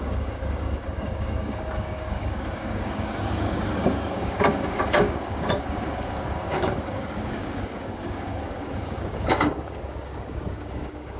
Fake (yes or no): yes